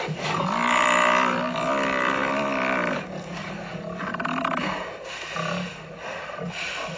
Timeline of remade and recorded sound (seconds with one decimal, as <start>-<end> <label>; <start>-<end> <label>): 0.0-7.0 recorded